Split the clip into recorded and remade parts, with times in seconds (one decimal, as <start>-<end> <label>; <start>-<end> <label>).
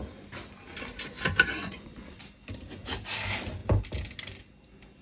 0.0-1.6 recorded; 1.6-2.2 remade; 2.2-5.0 recorded